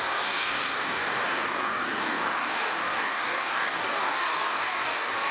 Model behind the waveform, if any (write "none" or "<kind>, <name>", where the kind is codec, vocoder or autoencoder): codec, DAC